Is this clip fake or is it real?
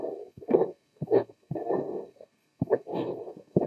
fake